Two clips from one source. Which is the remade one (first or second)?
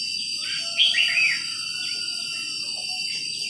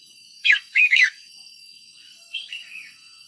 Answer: second